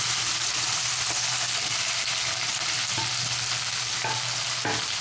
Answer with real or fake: real